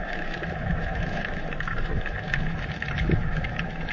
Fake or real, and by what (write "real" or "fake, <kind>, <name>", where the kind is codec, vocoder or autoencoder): fake, autoencoder, DAC-VAE